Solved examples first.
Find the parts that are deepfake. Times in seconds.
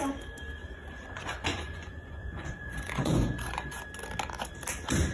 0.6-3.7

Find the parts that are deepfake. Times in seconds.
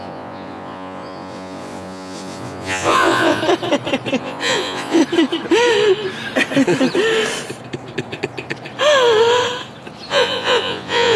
0.0-3.4; 4.2-5.0; 10.1-11.2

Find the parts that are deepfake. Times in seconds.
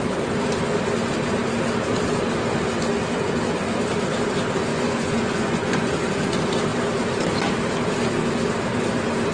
4.7-5.9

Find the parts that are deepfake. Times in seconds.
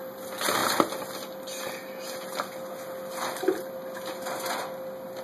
none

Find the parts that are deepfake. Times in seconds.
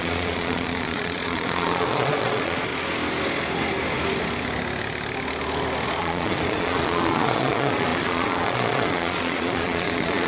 0.0-2.7; 6.0-10.3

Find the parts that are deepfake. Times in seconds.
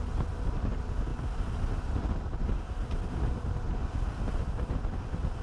none